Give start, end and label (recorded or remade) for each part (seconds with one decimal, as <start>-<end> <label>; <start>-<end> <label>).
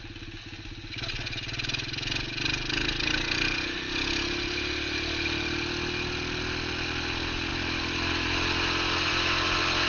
0.0-9.9 recorded